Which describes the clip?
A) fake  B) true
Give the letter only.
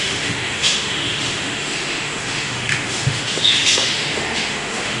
A